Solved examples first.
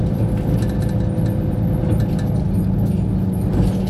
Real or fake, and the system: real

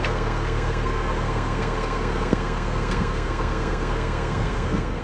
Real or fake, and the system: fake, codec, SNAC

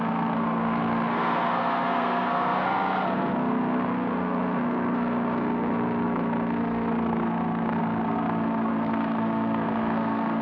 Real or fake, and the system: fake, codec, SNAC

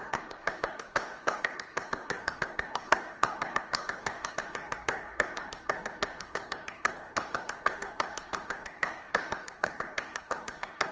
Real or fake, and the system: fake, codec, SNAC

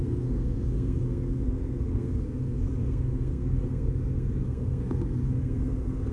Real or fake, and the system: fake, codec, SNAC